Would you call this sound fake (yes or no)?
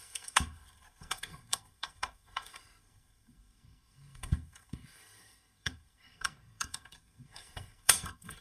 yes